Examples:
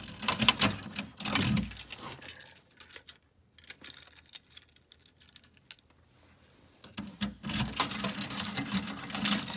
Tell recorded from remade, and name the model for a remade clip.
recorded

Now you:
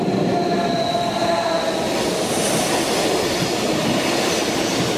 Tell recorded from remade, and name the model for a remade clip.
recorded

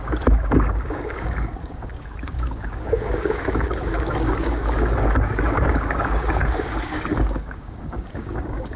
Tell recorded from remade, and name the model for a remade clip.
remade, codec, DAC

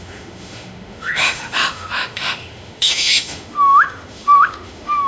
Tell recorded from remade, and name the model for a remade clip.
remade, autoencoder, DAC-VAE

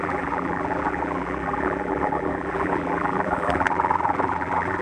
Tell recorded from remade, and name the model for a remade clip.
remade, vocoder, BigVGAN v2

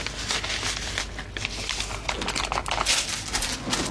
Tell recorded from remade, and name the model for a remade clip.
recorded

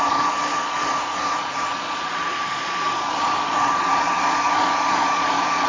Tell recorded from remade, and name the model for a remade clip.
remade, vocoder, Vocos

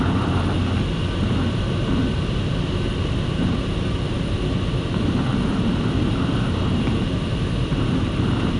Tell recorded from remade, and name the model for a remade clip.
recorded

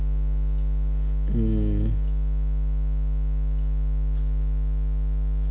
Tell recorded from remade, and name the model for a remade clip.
recorded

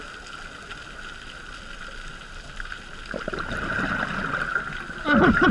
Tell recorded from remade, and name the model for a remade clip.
recorded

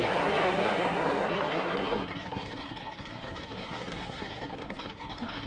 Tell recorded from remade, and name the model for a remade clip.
remade, codec, SNAC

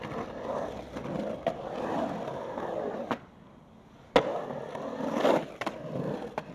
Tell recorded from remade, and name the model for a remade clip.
recorded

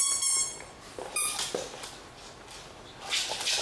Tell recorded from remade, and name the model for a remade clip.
recorded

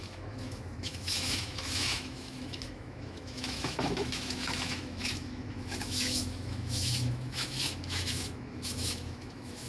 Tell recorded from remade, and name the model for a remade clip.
remade, autoencoder, DAC-VAE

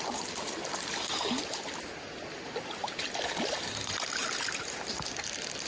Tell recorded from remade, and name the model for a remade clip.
recorded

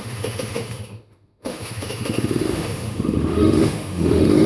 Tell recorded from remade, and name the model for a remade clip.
remade, autoencoder, DAC-VAE